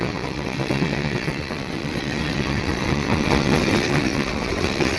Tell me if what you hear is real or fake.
fake